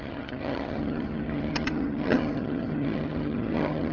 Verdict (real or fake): fake